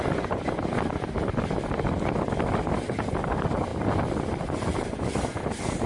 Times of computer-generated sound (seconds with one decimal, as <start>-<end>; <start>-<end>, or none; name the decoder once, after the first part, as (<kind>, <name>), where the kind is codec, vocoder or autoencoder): 3.7-5.9 (vocoder, BigVGAN v2)